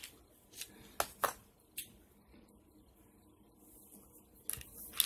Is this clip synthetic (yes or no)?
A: no